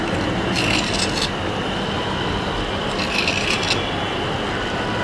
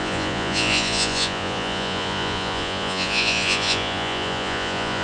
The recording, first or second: first